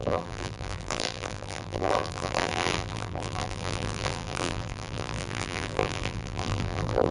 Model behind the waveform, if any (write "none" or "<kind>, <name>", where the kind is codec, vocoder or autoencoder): vocoder, BigVGAN v2